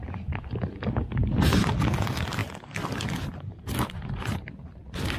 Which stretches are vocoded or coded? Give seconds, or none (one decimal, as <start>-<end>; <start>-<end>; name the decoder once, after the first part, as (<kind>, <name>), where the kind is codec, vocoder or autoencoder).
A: none